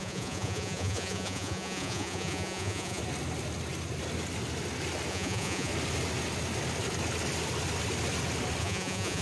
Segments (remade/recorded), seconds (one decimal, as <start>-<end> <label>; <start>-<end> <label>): 0.0-3.0 remade; 3.0-5.1 recorded; 5.1-5.7 remade; 5.7-8.6 recorded; 8.6-9.2 remade

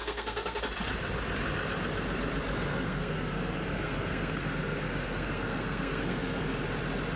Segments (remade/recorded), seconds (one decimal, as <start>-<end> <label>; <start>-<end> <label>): 0.0-0.6 remade; 0.6-2.7 recorded; 2.7-6.6 remade; 6.6-7.2 recorded

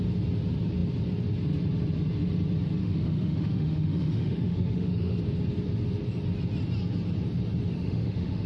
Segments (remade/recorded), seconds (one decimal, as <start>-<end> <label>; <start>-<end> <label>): 0.0-2.8 recorded; 2.8-5.2 remade; 5.2-7.7 recorded; 7.7-8.5 remade

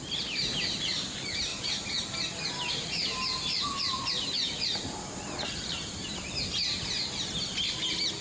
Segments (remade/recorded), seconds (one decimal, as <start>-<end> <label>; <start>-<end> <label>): 0.0-3.1 recorded; 3.1-6.5 remade; 6.5-8.2 recorded

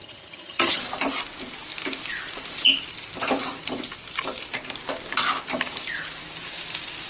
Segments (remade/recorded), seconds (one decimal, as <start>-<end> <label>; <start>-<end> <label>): 0.0-0.8 remade; 0.8-7.1 recorded

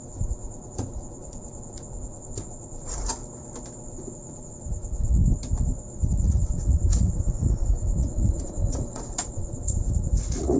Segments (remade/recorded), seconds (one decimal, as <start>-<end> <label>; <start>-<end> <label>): 0.0-3.1 remade; 3.1-3.9 recorded; 3.9-5.2 remade; 5.2-6.1 recorded; 6.1-10.6 remade

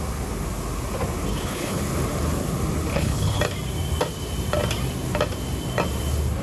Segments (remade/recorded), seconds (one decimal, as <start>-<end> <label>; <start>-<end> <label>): 0.0-1.3 recorded; 1.3-1.8 remade; 1.8-2.9 recorded; 2.9-3.4 remade; 3.4-6.4 recorded